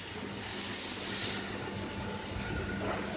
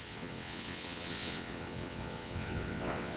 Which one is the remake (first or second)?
second